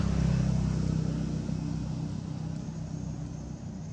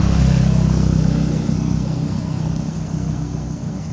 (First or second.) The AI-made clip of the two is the second